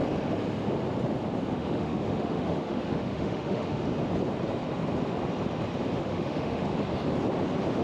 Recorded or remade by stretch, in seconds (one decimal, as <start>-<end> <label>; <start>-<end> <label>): 0.0-1.5 recorded; 1.5-3.9 remade; 3.9-6.0 recorded; 6.0-6.7 remade; 6.7-7.8 recorded

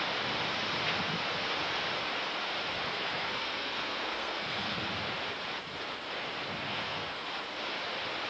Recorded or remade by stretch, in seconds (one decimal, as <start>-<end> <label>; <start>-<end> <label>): 0.0-2.9 recorded; 2.9-4.9 remade; 4.9-6.6 recorded; 6.6-7.3 remade; 7.3-8.3 recorded

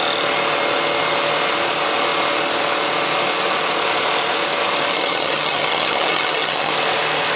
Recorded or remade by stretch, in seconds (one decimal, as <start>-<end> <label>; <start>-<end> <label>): 0.0-4.9 recorded; 4.9-6.7 remade; 6.7-7.4 recorded

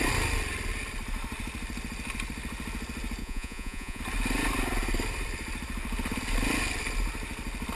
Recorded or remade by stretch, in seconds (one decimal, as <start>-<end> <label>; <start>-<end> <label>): 0.0-3.2 recorded; 3.2-4.0 remade; 4.0-7.8 recorded

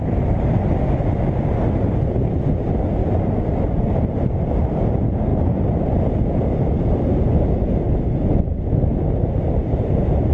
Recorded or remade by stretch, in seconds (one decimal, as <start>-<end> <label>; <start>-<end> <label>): 0.0-3.0 recorded; 3.0-3.9 remade; 3.9-10.3 recorded

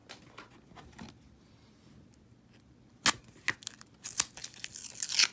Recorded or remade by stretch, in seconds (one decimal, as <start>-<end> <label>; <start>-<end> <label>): 0.0-5.3 recorded

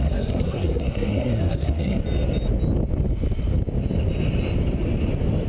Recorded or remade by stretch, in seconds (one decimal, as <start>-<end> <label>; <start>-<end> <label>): 0.0-2.0 remade; 2.0-5.5 recorded

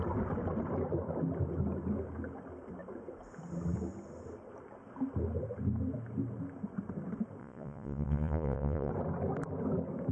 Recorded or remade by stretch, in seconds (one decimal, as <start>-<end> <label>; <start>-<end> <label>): 0.0-7.4 recorded; 7.4-8.9 remade; 8.9-10.1 recorded